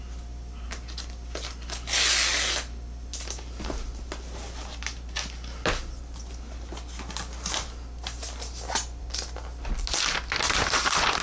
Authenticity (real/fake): real